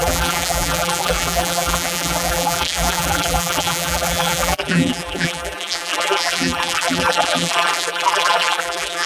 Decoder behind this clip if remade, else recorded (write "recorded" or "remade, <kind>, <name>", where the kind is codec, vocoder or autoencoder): remade, vocoder, BigVGAN v2